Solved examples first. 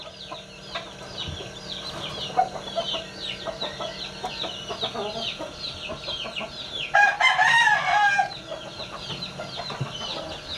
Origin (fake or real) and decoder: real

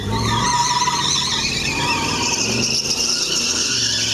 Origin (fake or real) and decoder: real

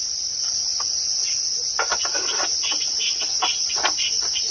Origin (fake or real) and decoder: real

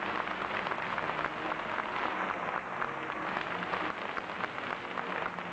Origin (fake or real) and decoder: real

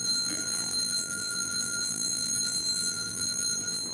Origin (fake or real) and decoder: fake, vocoder, BigVGAN v2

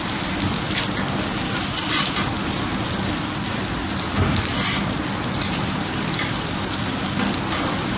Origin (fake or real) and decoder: real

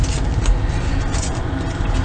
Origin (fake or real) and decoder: real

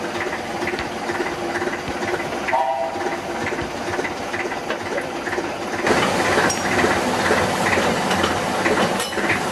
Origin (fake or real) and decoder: real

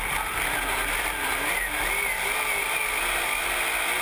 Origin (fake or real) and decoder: real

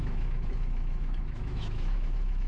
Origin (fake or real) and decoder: fake, autoencoder, DAC-VAE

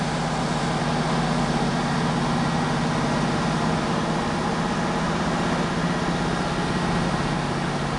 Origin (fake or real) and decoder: real